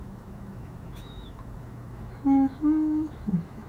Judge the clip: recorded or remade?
remade